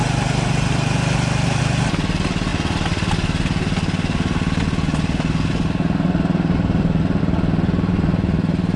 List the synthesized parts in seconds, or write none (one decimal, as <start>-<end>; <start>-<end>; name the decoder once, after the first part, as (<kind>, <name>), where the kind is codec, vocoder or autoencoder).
none